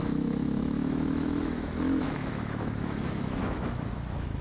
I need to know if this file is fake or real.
fake